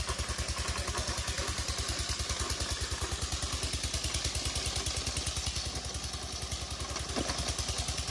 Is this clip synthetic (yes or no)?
no